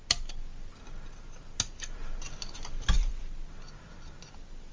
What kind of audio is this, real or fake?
real